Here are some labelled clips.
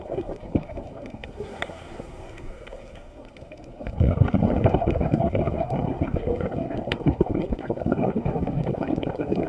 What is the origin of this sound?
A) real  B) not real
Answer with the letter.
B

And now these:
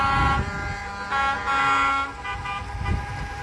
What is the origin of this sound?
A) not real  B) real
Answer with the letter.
B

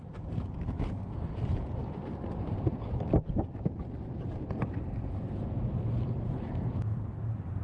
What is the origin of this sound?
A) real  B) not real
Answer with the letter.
B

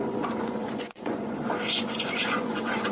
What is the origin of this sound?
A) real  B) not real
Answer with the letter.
B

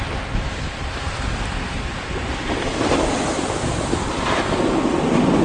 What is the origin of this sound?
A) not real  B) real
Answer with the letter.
B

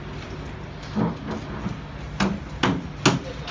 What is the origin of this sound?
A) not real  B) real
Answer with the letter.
B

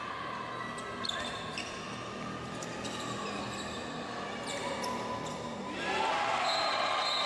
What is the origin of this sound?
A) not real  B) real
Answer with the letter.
B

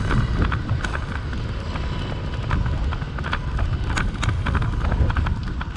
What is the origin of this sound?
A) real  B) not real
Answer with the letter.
A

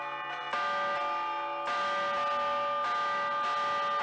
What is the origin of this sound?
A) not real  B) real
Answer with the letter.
B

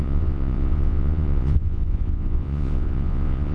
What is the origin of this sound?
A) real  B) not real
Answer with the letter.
B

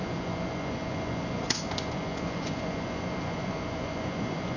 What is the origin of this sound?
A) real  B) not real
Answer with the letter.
B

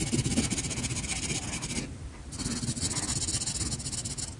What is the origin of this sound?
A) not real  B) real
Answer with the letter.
B